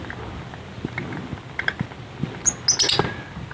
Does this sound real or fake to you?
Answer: real